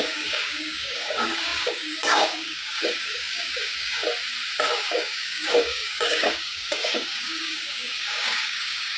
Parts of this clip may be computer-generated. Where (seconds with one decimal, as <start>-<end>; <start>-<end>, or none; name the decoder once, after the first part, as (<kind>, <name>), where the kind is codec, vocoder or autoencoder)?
0.0-4.0 (codec, DAC); 4.7-9.0